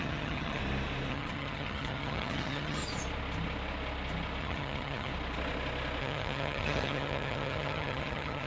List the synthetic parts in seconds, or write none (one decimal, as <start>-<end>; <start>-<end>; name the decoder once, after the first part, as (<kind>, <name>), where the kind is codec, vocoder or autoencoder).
0.0-0.6 (vocoder, HiFi-GAN); 1.1-2.8; 4.4-5.1; 6.0-8.5